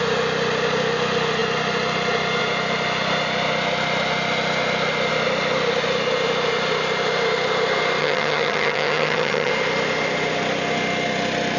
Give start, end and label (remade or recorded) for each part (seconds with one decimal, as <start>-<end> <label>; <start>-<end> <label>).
0.0-8.0 recorded; 8.0-9.5 remade; 9.5-11.6 recorded